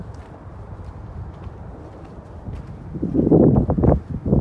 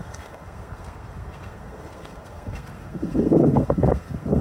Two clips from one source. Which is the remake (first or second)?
second